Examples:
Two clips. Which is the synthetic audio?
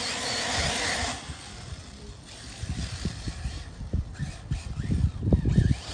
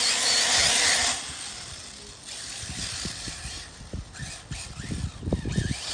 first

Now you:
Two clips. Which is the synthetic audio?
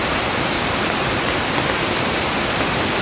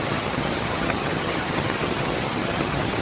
second